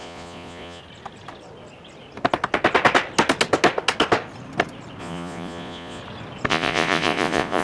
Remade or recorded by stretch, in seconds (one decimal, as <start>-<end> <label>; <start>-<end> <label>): 0.0-0.8 remade; 0.8-5.0 recorded; 5.0-6.0 remade; 6.0-6.5 recorded; 6.5-7.6 remade